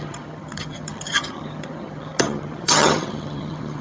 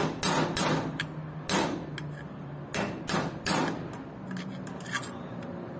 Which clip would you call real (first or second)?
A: second